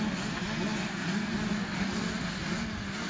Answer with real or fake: real